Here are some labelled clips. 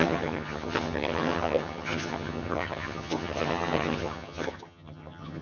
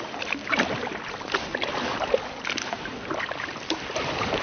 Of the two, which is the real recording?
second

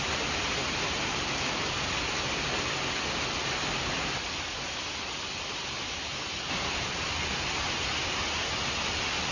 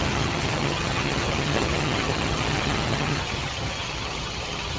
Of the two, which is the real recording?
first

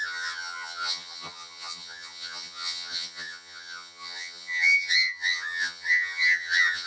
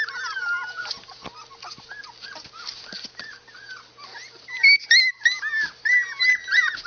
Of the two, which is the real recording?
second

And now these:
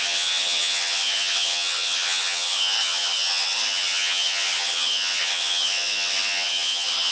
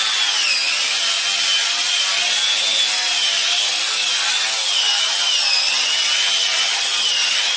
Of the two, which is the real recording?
second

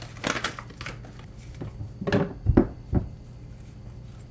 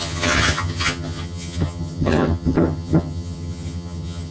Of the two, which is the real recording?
first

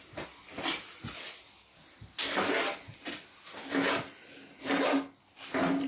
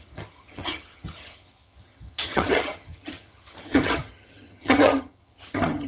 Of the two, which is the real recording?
first